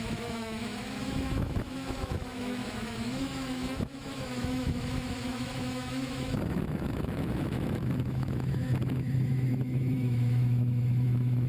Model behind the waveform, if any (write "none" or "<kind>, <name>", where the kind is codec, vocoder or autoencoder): autoencoder, DAC-VAE